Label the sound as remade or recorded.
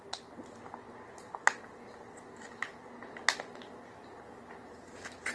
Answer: recorded